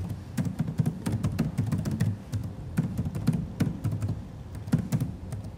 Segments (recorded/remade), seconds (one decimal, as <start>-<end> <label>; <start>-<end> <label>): 0.0-0.5 remade; 0.5-5.6 recorded